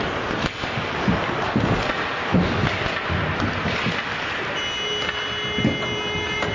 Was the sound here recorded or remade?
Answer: recorded